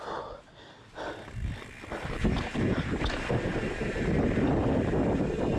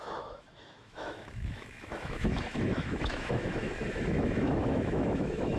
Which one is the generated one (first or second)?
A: second